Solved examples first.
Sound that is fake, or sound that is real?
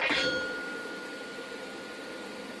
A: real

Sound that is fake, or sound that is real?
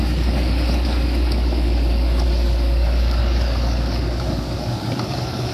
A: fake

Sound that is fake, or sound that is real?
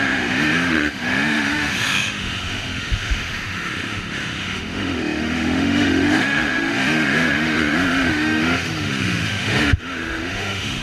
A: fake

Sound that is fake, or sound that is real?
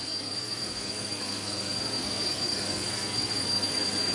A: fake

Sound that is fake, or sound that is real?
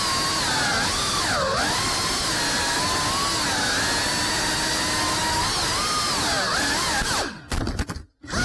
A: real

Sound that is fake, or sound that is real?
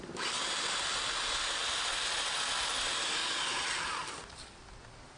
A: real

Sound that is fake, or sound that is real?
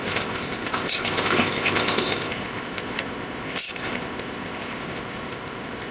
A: fake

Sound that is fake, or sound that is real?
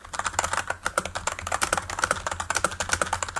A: real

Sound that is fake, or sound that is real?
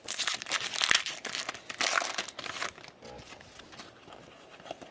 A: real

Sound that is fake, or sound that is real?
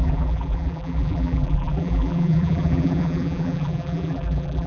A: fake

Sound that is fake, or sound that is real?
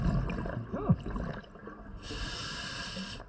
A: real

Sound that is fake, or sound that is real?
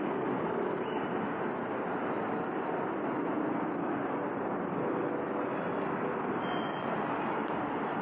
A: real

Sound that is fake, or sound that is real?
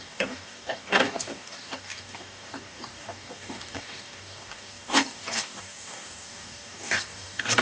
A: fake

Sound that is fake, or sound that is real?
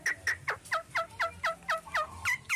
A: real